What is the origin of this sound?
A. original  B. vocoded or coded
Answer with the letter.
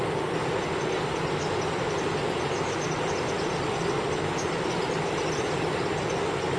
A